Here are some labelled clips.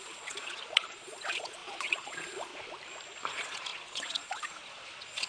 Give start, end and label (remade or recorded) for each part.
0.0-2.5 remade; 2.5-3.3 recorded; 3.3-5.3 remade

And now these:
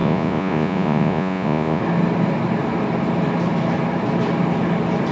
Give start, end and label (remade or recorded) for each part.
0.0-1.8 remade; 1.8-5.1 recorded

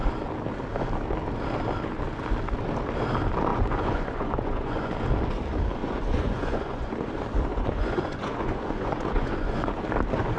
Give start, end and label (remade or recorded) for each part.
0.0-3.5 recorded; 3.5-4.9 remade; 4.9-5.8 recorded; 5.8-6.9 remade; 6.9-7.5 recorded; 7.5-9.8 remade; 9.8-10.4 recorded

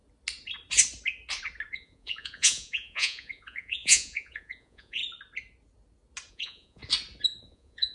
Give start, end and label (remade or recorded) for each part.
0.0-1.7 recorded; 1.7-5.0 remade; 5.0-6.3 recorded; 6.3-6.8 remade; 6.8-7.4 recorded; 7.4-7.9 remade

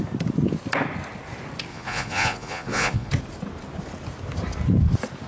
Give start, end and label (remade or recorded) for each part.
0.0-1.7 recorded; 1.7-3.1 remade; 3.1-5.3 recorded

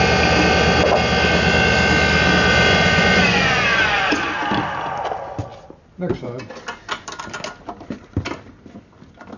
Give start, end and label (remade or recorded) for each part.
0.0-2.7 recorded; 2.7-4.3 remade; 4.3-9.4 recorded